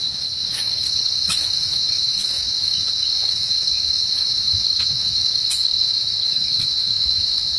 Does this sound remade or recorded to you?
remade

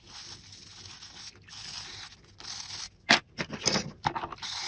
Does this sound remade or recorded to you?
recorded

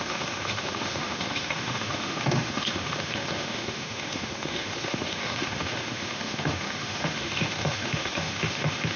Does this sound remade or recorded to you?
remade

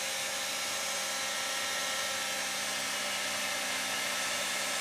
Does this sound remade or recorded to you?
recorded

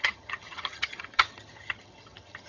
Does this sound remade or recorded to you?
remade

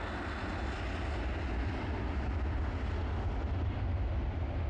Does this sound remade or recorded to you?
recorded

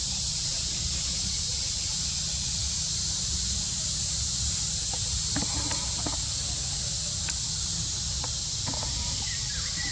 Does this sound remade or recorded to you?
remade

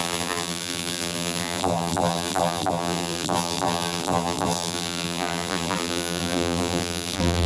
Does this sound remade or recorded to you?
remade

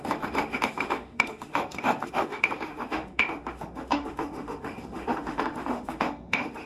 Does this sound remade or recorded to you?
remade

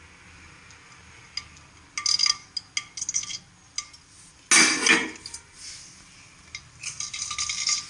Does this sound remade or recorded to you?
recorded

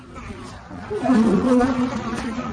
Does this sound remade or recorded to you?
remade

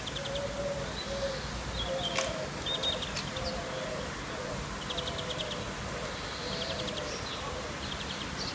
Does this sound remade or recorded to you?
recorded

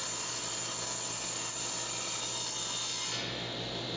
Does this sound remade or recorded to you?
recorded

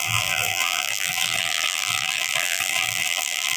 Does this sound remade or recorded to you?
remade